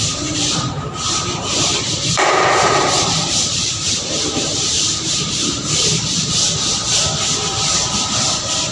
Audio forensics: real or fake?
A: fake